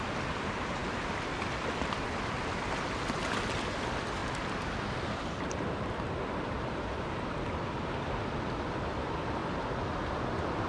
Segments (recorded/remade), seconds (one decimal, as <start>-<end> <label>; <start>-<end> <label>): 0.0-10.7 recorded